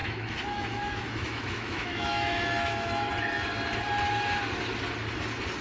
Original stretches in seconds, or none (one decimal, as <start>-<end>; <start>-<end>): 3.1-5.6